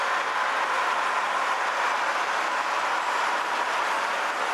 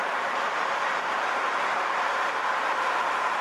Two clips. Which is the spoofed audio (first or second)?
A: second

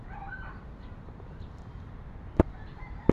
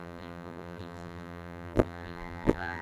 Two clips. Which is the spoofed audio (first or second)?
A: second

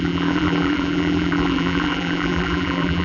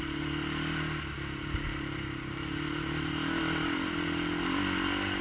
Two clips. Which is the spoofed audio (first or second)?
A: first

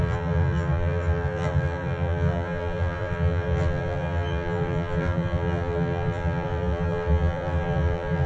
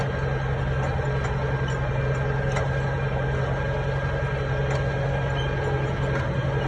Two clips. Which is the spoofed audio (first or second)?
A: first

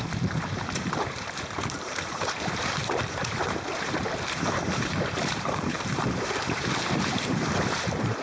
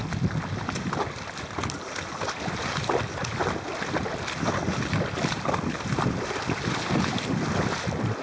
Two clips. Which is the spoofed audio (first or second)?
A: first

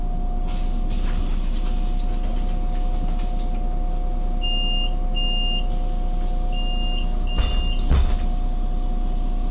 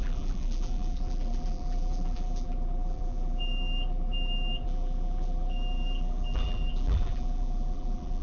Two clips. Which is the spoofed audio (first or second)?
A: second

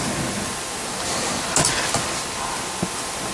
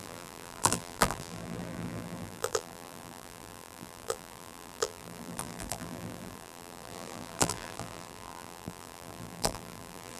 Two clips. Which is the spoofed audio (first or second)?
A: second